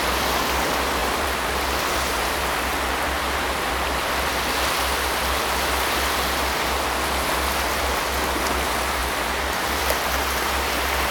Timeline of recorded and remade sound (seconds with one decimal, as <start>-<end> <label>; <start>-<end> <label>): 0.0-1.0 recorded; 1.0-3.7 remade; 3.7-9.0 recorded; 9.0-9.8 remade; 9.8-11.1 recorded